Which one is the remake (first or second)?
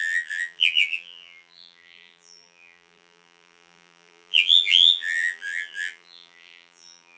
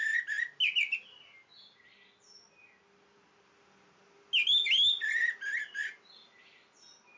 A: first